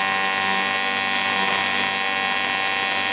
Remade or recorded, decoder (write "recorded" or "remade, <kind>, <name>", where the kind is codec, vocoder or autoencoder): recorded